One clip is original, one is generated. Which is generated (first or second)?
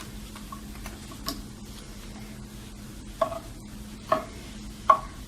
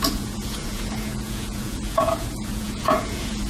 second